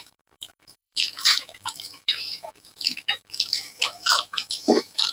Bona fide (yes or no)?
no